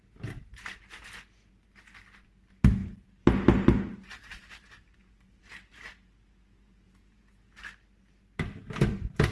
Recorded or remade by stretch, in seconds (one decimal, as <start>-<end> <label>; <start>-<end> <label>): 0.0-9.3 recorded